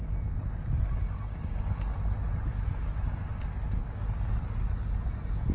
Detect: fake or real real